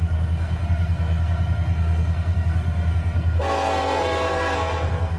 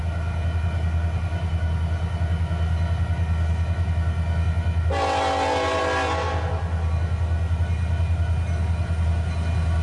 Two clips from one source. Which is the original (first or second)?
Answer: second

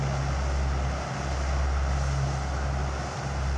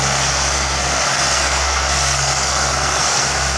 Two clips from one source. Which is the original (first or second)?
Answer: first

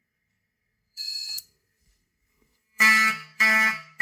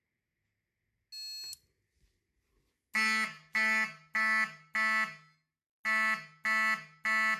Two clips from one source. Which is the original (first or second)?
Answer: second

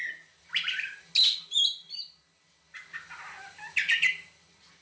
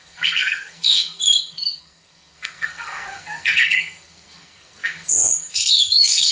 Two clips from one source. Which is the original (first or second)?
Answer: first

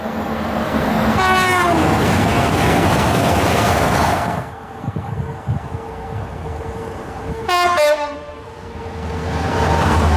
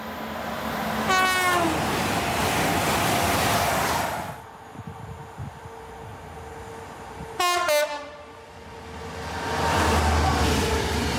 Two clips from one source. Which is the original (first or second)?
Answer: second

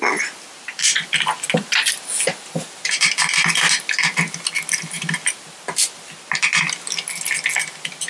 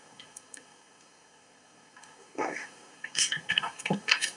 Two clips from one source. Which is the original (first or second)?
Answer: first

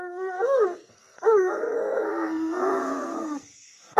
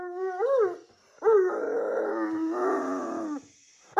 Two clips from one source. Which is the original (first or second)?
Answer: second